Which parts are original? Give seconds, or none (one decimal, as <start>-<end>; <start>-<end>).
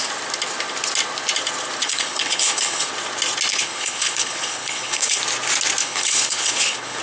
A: 0.0-1.8; 2.9-3.5; 5.2-5.8